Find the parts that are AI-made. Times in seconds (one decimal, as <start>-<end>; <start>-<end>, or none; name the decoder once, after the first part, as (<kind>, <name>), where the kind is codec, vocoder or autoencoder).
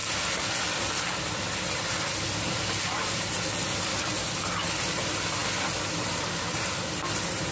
none